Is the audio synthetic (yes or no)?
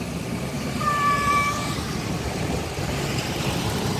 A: yes